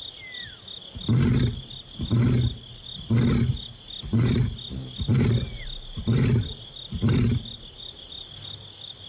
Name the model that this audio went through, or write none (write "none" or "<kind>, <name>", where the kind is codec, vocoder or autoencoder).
none